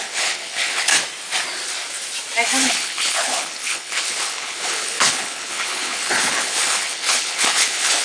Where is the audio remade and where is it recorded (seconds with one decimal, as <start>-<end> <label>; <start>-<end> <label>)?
0.0-0.9 remade; 0.9-2.6 recorded; 2.6-8.0 remade